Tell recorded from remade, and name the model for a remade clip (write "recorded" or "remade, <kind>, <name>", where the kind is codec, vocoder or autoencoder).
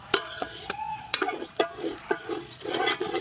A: remade, vocoder, Vocos